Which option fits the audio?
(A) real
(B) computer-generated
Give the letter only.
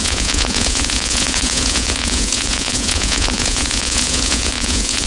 B